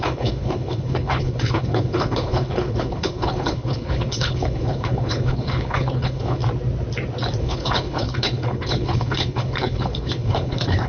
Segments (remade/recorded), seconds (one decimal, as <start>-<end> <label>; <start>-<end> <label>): 0.0-6.4 remade; 6.4-7.4 recorded; 7.4-10.9 remade